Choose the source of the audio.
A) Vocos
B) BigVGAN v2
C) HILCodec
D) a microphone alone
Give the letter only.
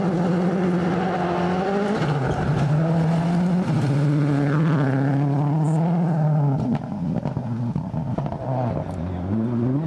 D